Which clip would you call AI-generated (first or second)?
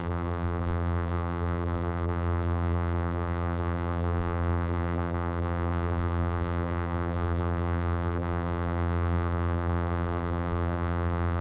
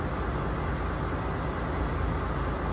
first